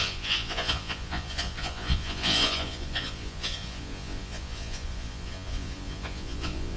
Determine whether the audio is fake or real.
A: fake